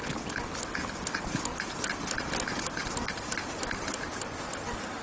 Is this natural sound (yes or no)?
yes